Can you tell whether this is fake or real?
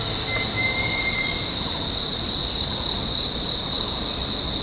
real